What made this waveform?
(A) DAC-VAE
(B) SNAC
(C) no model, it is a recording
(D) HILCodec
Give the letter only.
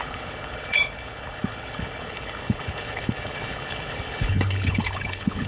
D